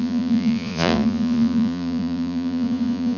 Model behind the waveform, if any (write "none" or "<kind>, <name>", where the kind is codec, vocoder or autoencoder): vocoder, Vocos